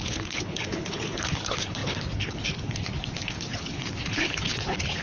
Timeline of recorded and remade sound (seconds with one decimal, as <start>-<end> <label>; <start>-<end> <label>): 0.0-5.0 remade